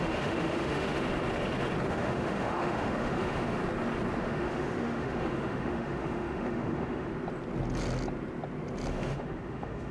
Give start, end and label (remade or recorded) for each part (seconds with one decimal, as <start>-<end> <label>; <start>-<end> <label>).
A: 0.0-1.1 remade; 1.1-1.9 recorded; 1.9-3.6 remade; 3.6-4.2 recorded; 4.2-7.1 remade; 7.1-8.9 recorded; 8.9-9.9 remade